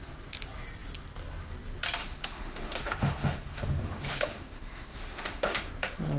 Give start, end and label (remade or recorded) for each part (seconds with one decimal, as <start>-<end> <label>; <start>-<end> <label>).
0.0-2.0 recorded; 2.0-5.7 remade; 5.7-6.2 recorded

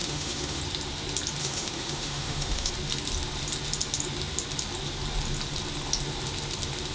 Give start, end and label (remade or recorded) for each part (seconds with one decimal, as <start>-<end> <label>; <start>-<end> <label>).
0.0-0.6 remade; 0.6-1.4 recorded; 1.4-2.7 remade; 2.7-6.9 recorded

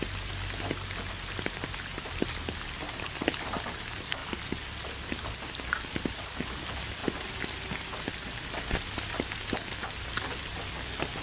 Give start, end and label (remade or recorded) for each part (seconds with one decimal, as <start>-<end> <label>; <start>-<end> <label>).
0.0-11.2 recorded

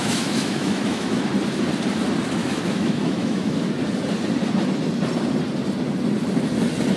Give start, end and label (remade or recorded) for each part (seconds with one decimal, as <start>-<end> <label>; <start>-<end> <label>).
0.0-1.2 remade; 1.2-2.4 recorded; 2.4-3.7 remade; 3.7-7.0 recorded